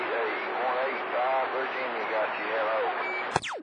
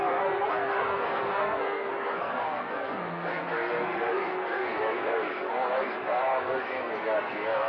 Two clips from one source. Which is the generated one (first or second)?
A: second